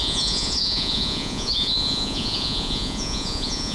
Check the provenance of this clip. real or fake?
fake